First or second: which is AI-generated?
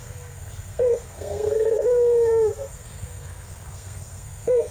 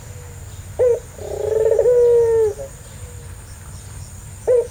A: first